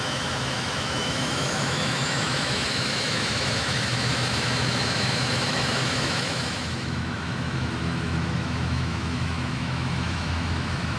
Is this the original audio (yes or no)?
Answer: no